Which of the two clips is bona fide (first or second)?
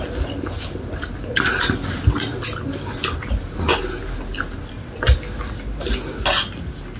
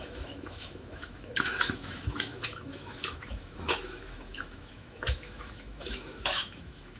first